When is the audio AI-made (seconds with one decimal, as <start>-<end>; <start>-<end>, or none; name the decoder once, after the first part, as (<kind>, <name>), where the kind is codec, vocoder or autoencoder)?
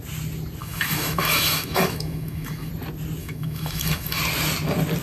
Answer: 0.6-2.7 (autoencoder, DAC-VAE); 3.2-4.2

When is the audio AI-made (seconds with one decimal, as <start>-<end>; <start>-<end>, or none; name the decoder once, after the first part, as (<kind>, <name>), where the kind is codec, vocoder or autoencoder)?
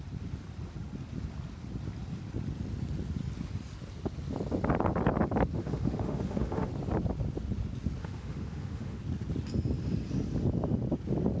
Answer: 5.6-6.7 (autoencoder, DAC-VAE); 8.0-9.0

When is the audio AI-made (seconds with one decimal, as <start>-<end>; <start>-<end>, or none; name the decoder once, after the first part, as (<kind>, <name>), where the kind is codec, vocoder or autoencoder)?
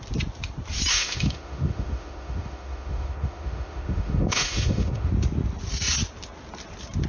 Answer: 0.9-5.1 (autoencoder, DAC-VAE)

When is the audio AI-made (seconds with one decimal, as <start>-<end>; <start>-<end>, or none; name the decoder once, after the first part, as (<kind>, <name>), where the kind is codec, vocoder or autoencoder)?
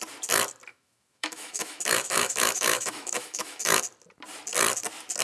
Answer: 0.7-3.8 (autoencoder, DAC-VAE)